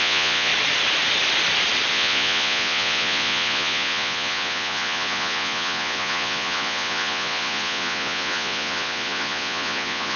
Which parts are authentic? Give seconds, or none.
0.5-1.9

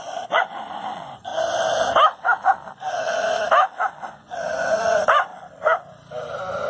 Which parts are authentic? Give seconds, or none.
1.3-4.1; 5.3-6.7

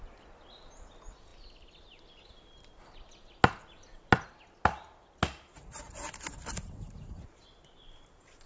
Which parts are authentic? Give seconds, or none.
0.0-8.5

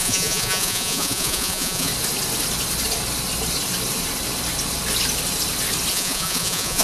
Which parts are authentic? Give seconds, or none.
1.9-5.9

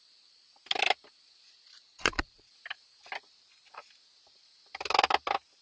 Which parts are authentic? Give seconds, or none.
0.0-1.9; 2.5-5.6

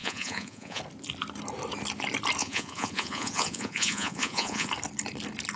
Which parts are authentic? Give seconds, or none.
0.8-2.4; 4.7-5.6